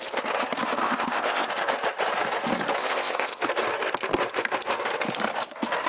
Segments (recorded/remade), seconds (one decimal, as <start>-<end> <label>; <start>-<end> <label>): 0.0-0.8 recorded; 0.8-1.5 remade; 1.5-2.8 recorded; 2.8-3.4 remade; 3.4-5.9 recorded